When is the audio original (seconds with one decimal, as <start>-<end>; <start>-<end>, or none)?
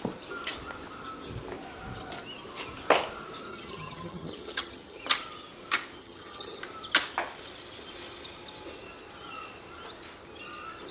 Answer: 0.0-3.5; 5.0-6.0; 6.6-10.9